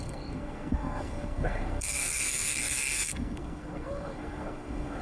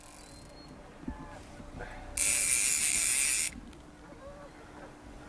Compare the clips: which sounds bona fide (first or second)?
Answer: second